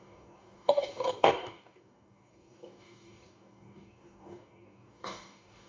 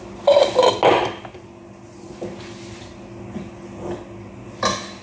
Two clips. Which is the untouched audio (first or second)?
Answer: second